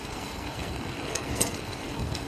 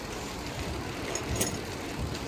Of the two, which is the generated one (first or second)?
first